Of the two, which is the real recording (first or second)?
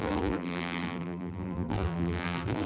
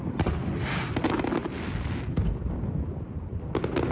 second